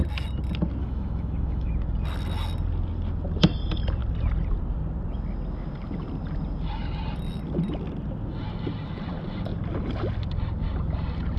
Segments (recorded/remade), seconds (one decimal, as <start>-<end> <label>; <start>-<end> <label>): 0.0-0.8 recorded; 0.8-1.7 remade; 1.7-11.4 recorded